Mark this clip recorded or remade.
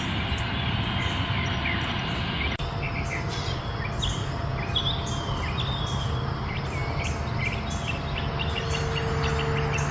recorded